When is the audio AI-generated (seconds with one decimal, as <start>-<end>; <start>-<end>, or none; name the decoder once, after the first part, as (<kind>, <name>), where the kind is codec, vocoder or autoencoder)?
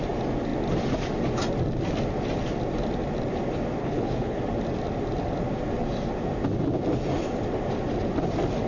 3.8-4.4 (codec, HILCodec)